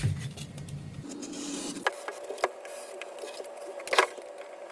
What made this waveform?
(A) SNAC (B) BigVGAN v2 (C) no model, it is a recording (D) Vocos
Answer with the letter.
C